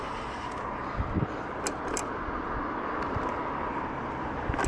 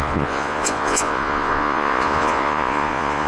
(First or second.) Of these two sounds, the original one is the first